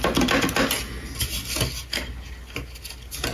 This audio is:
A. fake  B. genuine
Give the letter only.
B